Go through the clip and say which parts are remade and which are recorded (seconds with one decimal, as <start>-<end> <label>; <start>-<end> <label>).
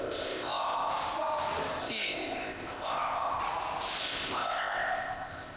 0.0-0.9 remade; 0.9-1.8 recorded; 1.8-3.4 remade; 3.4-4.0 recorded; 4.0-5.6 remade